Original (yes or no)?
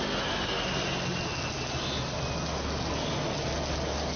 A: yes